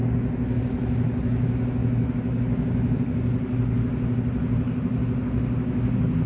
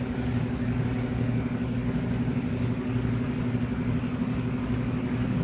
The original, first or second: first